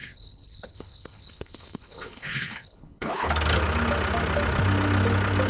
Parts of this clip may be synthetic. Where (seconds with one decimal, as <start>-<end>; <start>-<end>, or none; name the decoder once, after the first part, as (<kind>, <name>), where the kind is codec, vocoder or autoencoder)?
0.0-3.3 (codec, HILCodec)